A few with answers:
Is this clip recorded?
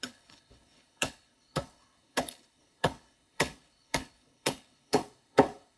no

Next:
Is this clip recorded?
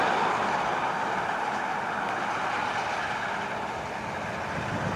yes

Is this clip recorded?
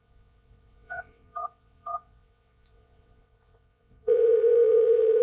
no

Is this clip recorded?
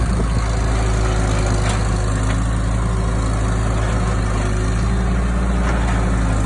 yes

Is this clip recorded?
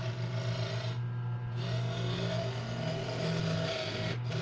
yes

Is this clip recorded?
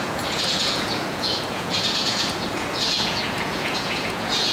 no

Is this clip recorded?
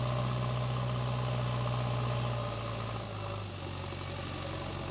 yes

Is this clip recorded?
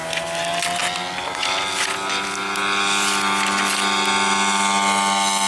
yes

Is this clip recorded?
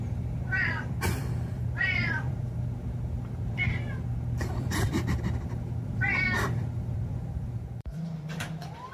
no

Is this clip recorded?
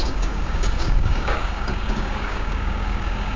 no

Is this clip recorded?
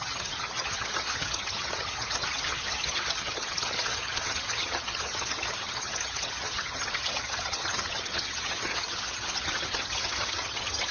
no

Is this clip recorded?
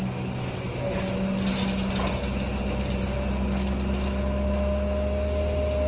yes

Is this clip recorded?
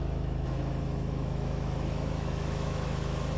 no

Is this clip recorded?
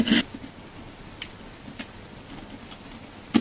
yes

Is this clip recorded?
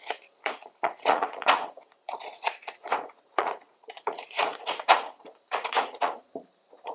no